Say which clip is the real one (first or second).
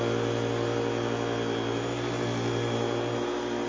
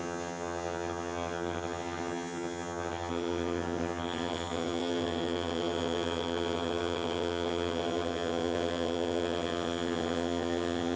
first